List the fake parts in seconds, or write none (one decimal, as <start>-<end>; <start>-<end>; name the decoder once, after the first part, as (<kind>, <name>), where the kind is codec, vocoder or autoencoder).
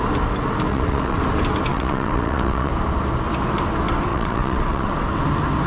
0.7-1.2 (vocoder, WaveNeXt); 1.7-2.7; 4.1-4.9